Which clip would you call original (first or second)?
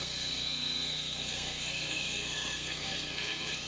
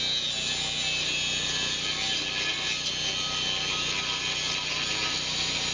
second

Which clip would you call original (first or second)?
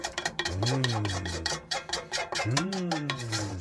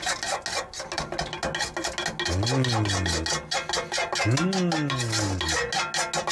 second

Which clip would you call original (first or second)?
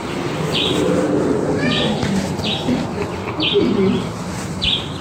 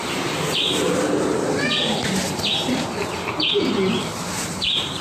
first